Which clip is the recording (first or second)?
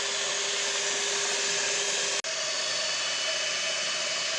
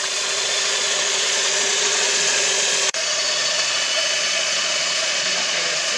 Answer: first